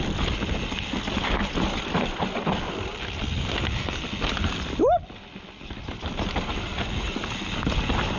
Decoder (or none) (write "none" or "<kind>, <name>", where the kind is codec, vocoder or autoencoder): none